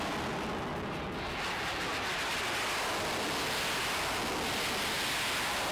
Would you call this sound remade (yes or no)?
no